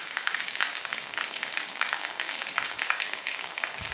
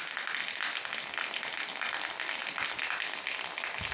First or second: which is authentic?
second